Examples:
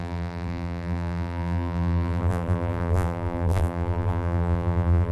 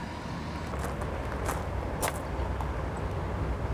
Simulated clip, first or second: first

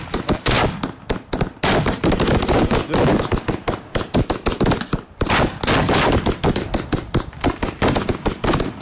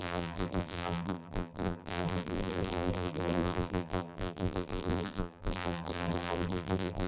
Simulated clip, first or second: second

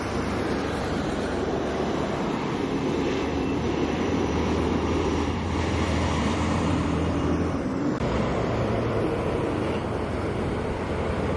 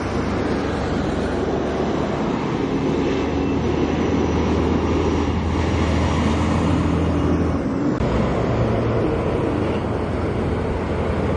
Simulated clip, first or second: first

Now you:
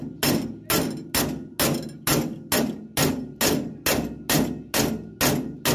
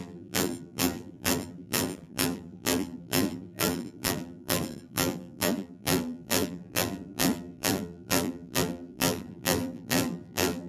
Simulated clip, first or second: second